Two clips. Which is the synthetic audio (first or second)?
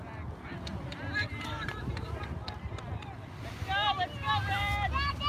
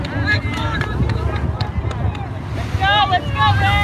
first